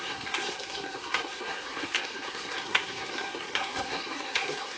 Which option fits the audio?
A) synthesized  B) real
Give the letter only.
A